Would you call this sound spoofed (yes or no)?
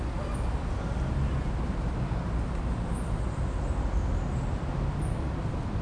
no